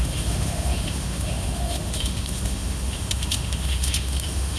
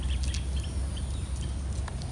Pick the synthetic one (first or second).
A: first